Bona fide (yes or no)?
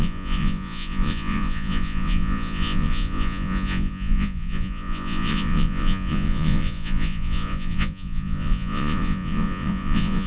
no